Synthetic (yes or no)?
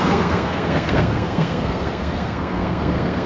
yes